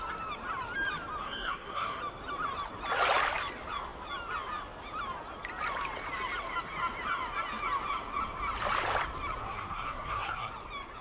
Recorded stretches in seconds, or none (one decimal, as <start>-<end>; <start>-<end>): 0.0-1.2; 2.0-9.4; 10.5-11.0